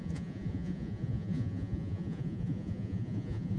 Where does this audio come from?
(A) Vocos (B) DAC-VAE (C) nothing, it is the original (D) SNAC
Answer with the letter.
A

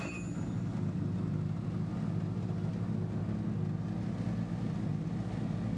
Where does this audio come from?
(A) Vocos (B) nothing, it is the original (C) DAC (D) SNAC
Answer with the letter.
B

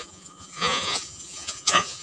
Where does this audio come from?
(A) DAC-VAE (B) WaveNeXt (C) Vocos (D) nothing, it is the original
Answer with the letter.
C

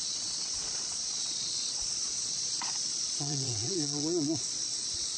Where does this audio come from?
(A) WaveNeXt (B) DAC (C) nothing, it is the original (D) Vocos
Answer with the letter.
D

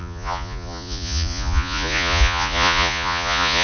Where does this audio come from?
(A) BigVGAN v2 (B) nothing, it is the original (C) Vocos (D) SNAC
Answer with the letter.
C